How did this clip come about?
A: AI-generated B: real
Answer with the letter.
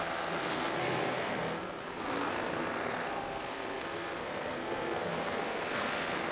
A